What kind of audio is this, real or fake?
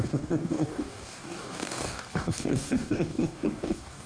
fake